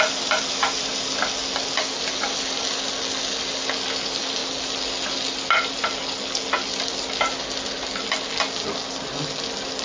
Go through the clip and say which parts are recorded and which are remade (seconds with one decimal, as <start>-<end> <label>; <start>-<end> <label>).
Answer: 0.0-9.8 recorded